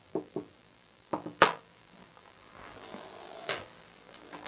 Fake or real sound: fake